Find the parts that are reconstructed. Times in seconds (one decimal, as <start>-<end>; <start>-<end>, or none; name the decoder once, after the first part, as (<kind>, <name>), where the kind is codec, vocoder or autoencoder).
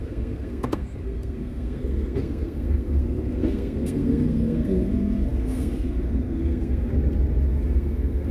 0.0-6.9 (codec, SNAC); 7.5-8.3